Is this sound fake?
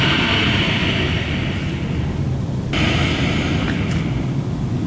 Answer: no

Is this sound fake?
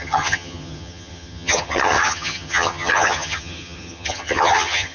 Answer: yes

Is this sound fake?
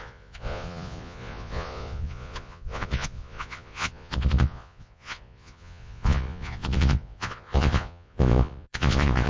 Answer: yes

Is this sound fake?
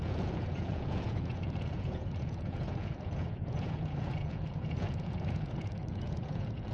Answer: yes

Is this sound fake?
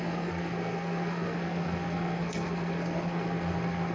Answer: yes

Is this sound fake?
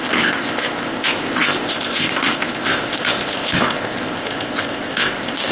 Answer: yes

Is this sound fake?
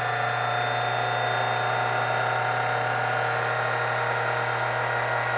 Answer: no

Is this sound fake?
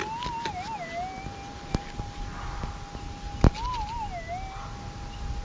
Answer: no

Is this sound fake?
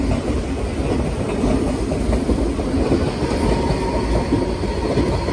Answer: no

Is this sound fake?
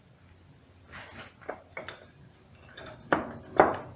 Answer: no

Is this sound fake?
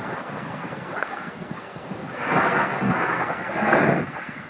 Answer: yes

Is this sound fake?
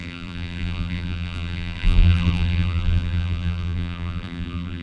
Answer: yes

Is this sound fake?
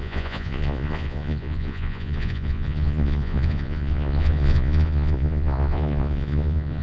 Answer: yes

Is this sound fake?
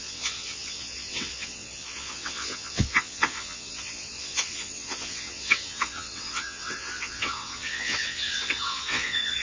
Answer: yes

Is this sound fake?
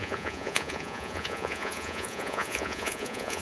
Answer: yes